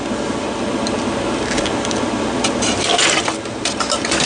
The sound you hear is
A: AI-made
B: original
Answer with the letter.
B